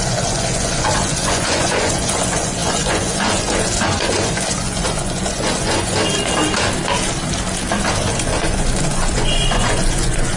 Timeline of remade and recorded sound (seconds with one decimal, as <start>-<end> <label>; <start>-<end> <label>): 0.0-6.0 remade; 6.0-8.1 recorded; 8.1-10.4 remade